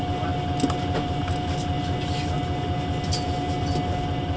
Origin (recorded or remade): recorded